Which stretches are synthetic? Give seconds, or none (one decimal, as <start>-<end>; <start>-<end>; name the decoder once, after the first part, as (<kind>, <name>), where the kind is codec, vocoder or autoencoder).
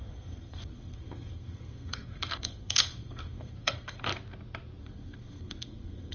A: 0.0-4.1 (codec, SNAC); 4.8-6.1